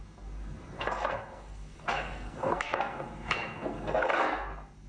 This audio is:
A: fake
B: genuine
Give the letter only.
A